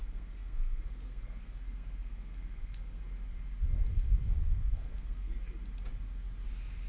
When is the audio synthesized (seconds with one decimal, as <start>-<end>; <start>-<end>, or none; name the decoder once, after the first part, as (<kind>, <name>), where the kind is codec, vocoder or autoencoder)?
0.0-3.0 (codec, SNAC); 3.9-5.3